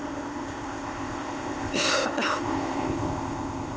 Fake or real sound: fake